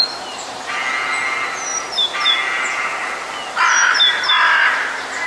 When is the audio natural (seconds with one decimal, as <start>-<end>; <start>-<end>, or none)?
0.0-5.3